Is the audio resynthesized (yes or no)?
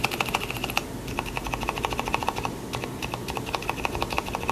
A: no